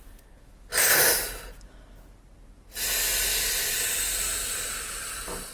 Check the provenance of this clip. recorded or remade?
recorded